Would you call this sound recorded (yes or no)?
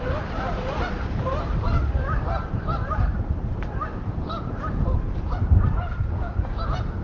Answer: no